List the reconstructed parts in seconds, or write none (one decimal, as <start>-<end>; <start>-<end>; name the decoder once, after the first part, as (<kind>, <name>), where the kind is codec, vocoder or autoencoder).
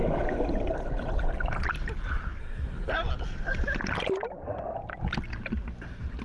2.4-2.9 (codec, SNAC)